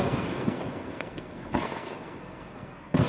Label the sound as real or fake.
fake